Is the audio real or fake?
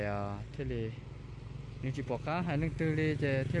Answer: real